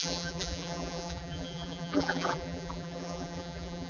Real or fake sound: fake